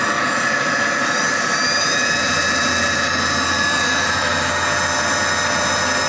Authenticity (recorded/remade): recorded